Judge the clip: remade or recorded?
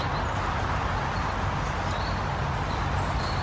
recorded